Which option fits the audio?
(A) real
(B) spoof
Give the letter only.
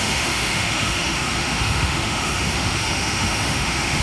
B